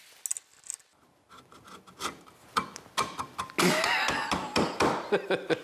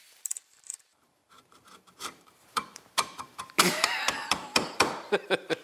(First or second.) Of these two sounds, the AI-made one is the second